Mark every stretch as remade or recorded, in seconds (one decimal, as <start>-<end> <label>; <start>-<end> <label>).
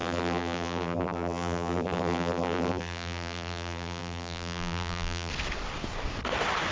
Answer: 0.0-5.3 remade; 5.3-6.7 recorded